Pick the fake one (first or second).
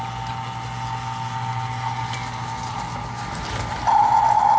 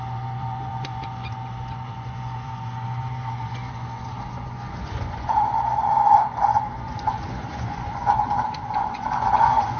second